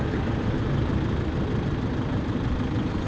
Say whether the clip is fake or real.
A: real